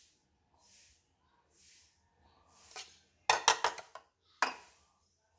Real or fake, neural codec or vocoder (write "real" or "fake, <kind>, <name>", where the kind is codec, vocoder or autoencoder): real